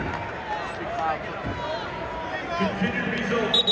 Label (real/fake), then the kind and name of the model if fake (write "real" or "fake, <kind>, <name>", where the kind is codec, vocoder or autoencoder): real